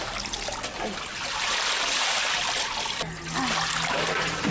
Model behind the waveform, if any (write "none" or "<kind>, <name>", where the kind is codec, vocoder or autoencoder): none